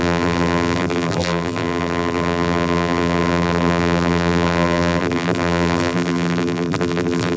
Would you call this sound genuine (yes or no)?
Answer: no